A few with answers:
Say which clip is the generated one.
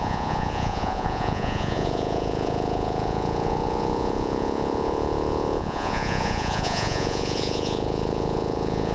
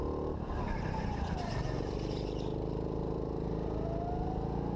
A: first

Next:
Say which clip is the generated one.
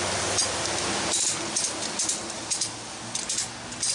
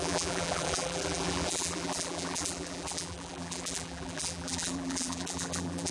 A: second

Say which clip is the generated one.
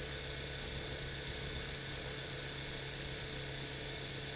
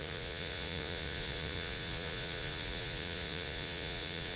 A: second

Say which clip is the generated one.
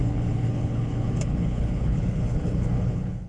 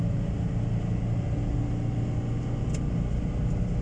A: first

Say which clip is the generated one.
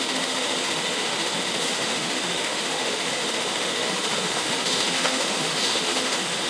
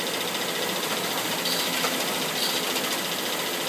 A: first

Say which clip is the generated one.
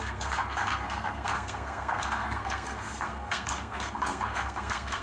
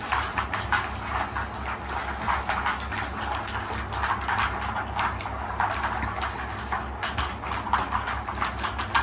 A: first